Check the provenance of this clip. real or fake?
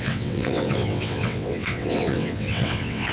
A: fake